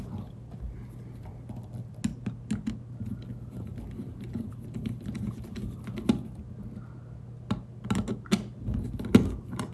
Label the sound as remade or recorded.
recorded